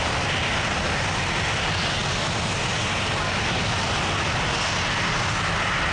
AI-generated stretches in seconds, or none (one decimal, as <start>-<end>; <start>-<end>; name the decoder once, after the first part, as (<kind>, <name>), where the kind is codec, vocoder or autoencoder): none